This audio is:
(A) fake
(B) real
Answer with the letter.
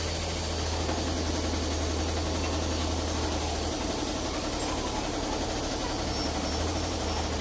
B